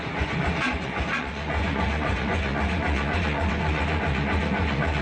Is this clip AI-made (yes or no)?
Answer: yes